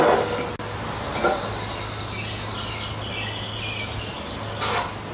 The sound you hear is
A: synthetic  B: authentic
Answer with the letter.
B